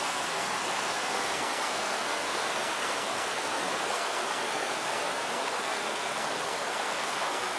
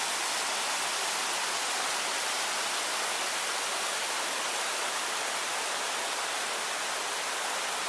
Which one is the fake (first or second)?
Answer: first